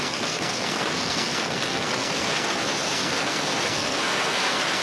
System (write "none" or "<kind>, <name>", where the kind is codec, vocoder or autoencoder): codec, SNAC